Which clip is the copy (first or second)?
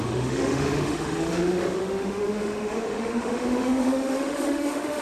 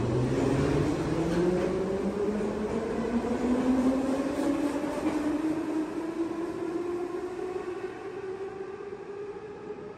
first